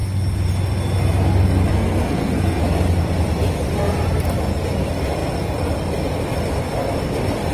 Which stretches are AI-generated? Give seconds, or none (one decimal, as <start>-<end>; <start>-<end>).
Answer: 1.7-2.6